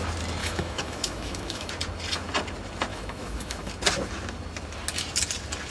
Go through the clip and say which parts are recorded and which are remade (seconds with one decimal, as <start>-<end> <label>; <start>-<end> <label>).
0.0-0.4 recorded; 0.4-1.7 remade; 1.7-2.9 recorded; 2.9-3.7 remade; 3.7-5.7 recorded